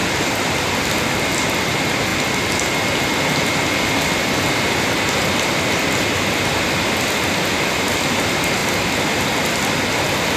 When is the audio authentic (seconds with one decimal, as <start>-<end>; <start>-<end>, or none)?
0.0-10.4